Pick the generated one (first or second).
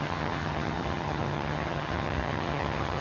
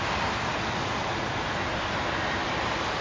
first